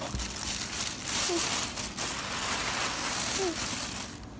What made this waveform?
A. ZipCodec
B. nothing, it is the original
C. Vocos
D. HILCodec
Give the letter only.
B